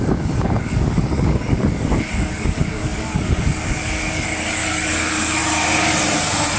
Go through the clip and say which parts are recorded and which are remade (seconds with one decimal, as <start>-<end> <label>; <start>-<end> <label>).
0.0-5.4 remade; 5.4-6.6 recorded